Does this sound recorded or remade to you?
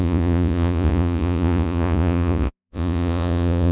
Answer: remade